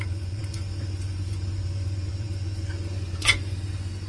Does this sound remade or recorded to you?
remade